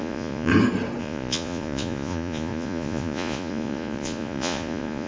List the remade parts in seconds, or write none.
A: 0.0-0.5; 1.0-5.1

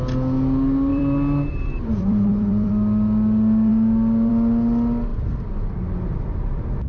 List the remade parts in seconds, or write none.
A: 0.9-2.7; 5.1-6.9

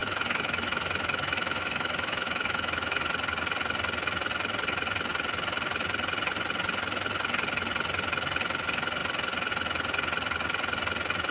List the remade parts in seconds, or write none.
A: 0.0-3.1

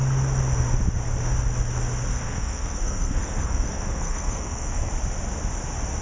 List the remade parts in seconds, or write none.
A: 2.1-4.9

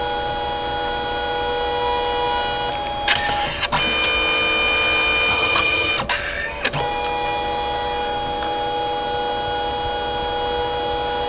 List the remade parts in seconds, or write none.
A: 5.3-5.9

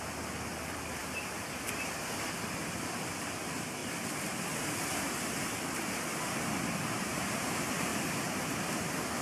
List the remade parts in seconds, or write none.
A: 7.9-8.5